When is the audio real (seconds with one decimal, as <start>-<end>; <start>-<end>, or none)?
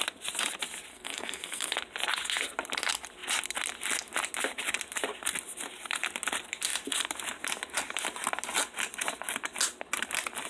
0.0-0.9; 1.7-10.5